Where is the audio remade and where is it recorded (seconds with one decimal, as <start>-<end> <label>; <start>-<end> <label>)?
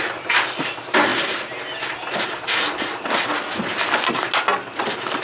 0.0-5.2 recorded